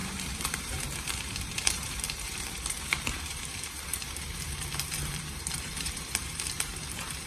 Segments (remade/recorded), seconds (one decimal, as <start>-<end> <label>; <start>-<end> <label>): 0.0-7.3 remade